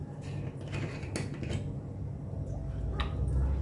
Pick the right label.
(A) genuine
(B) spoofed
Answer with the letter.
A